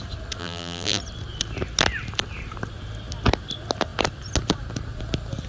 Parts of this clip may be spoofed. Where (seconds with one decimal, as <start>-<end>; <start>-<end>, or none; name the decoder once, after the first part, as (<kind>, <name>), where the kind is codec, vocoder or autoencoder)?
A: 0.4-1.0 (vocoder, BigVGAN v2)